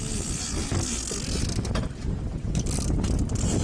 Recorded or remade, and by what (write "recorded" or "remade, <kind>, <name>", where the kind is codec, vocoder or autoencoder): recorded